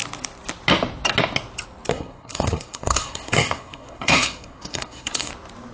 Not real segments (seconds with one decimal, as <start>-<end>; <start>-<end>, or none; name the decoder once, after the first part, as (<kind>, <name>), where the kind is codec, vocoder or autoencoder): 1.9-5.3 (codec, SNAC)